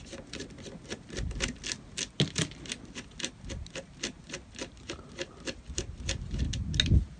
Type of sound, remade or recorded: recorded